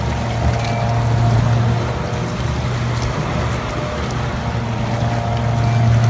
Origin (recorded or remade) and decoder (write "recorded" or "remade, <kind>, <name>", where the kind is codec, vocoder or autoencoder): recorded